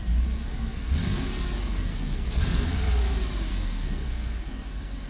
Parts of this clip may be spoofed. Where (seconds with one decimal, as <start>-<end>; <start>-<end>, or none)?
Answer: 0.0-3.1; 3.5-5.1